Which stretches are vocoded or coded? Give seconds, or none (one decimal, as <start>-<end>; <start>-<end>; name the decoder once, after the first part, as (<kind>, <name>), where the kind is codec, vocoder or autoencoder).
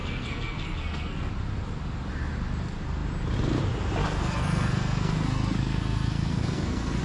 0.0-1.3 (codec, SNAC); 4.0-7.0